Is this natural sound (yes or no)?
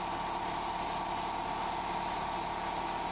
yes